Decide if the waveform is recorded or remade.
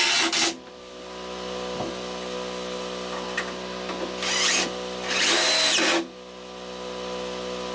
recorded